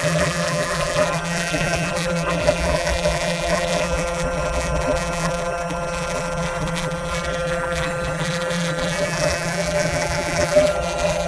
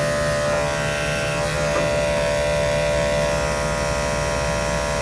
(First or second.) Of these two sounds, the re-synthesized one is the first